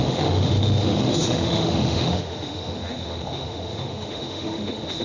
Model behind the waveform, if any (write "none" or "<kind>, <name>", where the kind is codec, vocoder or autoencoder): autoencoder, DAC-VAE